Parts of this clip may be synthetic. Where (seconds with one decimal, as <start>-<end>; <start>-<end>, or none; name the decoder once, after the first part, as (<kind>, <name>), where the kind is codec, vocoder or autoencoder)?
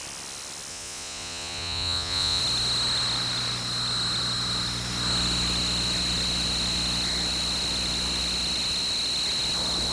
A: 0.7-2.4 (vocoder, Vocos)